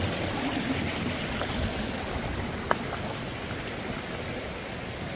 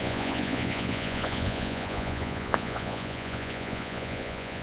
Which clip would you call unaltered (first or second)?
first